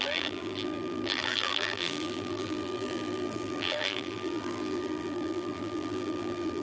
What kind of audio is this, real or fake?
fake